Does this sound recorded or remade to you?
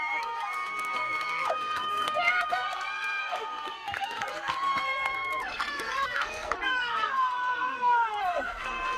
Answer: remade